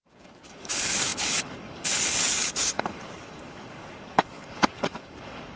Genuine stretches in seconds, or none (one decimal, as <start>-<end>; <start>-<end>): none